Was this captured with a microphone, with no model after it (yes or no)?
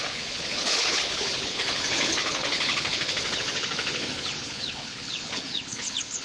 no